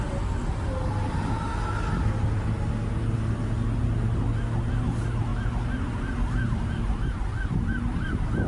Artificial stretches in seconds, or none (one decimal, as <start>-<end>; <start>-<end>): none